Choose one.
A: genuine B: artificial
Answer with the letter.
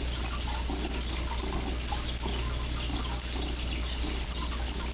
A